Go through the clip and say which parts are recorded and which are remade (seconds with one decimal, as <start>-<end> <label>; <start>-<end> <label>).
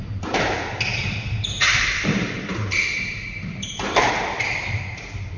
0.0-0.9 recorded; 0.9-4.1 remade; 4.1-5.4 recorded